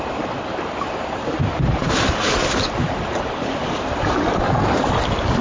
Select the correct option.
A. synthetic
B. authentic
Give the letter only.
A